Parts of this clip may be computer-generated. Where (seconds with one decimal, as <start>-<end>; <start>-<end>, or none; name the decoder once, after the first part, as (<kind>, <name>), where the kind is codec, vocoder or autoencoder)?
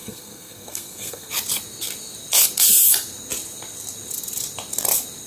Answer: 0.0-1.3 (codec, SNAC)